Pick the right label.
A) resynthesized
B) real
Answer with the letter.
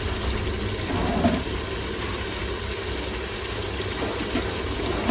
B